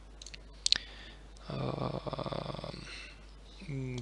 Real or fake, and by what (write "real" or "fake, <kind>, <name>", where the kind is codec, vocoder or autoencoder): real